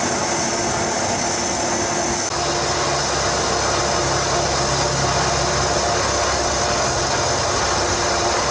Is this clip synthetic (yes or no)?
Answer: no